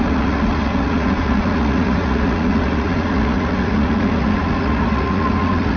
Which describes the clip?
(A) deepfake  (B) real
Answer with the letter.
A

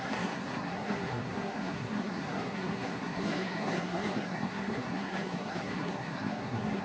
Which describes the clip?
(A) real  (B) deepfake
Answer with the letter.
B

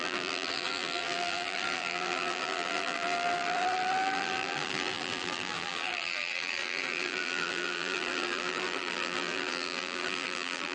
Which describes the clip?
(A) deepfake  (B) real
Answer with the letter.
A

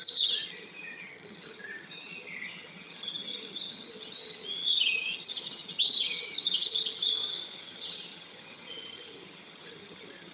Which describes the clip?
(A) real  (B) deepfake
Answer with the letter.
B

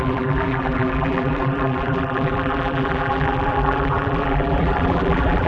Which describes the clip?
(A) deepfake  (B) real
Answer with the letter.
A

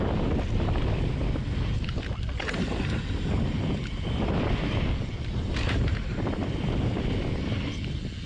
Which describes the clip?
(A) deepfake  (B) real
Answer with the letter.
B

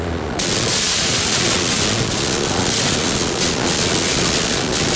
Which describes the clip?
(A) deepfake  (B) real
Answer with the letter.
A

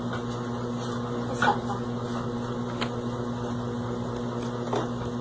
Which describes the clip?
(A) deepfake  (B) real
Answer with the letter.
B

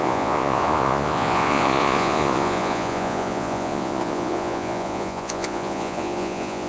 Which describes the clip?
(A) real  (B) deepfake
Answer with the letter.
B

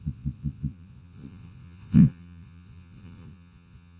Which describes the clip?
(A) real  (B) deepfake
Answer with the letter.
B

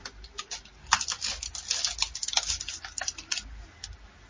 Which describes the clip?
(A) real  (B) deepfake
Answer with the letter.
A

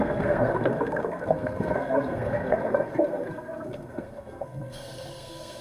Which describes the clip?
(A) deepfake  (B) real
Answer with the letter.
A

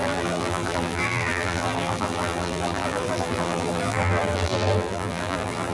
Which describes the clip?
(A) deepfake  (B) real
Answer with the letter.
A